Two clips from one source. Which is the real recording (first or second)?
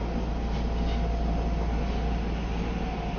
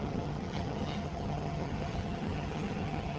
first